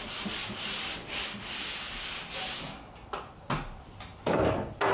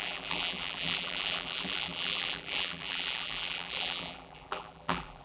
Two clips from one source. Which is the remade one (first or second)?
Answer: second